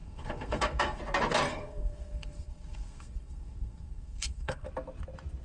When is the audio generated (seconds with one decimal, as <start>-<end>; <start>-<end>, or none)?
0.0-1.0; 1.5-4.7